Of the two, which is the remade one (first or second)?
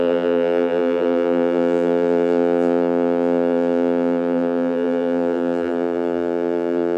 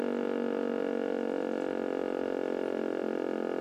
first